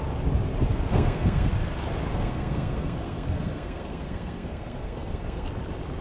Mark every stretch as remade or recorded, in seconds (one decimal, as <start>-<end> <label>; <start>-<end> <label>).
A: 0.0-0.9 recorded; 0.9-1.5 remade; 1.5-2.1 recorded; 2.1-5.5 remade; 5.5-6.0 recorded